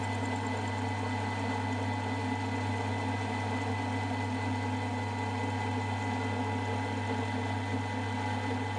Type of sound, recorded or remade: recorded